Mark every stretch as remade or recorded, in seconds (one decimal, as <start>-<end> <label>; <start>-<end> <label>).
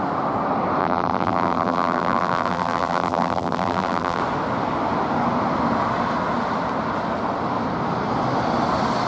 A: 0.0-0.8 recorded; 0.8-4.2 remade; 4.2-9.1 recorded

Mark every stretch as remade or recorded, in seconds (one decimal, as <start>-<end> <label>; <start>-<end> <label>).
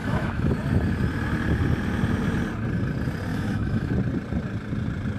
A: 0.0-0.5 remade; 0.5-3.3 recorded; 3.3-3.9 remade; 3.9-5.2 recorded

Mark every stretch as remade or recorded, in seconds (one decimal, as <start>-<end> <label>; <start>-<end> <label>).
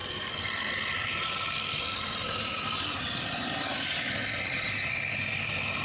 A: 0.0-3.7 recorded; 3.7-4.9 remade; 4.9-5.8 recorded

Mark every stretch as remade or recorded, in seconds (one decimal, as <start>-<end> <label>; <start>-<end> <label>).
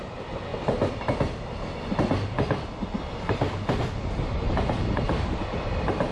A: 0.0-6.1 recorded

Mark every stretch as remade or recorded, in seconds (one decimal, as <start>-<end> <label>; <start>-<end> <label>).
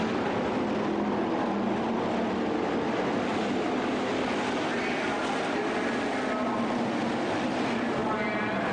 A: 0.0-8.7 recorded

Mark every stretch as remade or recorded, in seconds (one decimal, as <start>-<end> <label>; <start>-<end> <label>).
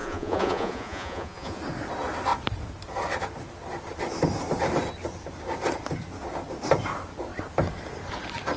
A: 0.0-1.6 remade; 1.6-8.6 recorded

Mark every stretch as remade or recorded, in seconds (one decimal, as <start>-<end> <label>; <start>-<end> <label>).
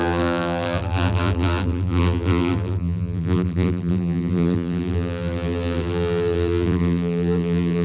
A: 0.0-7.8 remade